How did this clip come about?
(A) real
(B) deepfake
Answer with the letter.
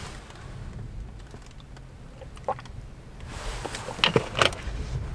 A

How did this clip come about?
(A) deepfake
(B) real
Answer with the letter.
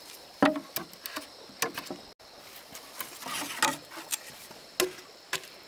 B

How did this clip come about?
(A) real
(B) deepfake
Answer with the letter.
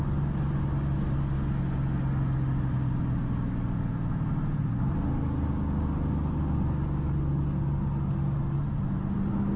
A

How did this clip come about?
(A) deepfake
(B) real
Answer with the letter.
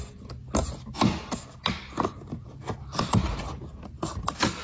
B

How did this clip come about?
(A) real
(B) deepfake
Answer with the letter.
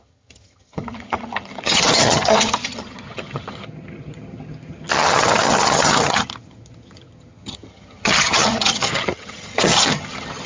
B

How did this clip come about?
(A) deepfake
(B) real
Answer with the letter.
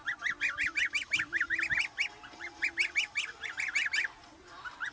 B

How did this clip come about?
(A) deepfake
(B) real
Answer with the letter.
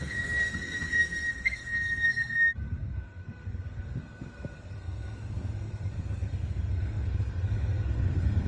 A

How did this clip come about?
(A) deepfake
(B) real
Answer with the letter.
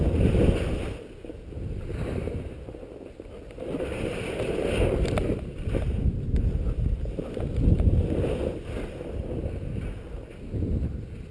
B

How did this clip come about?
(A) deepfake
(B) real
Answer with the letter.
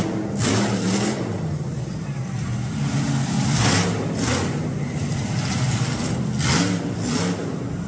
B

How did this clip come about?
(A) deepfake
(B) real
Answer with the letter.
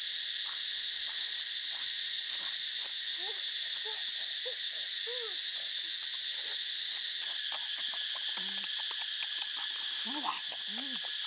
B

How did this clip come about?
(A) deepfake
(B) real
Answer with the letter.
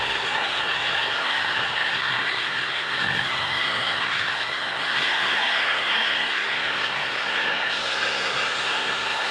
A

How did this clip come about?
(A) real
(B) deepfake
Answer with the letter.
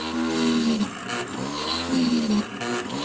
A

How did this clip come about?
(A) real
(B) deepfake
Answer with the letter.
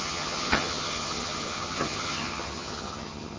B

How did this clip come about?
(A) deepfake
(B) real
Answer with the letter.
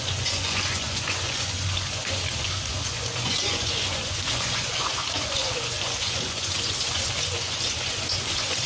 A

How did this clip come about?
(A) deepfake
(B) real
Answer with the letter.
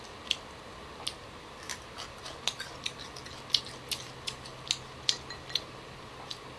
B